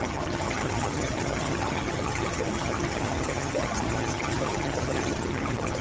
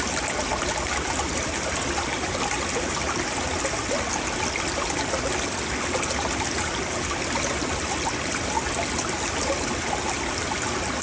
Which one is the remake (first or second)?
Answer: first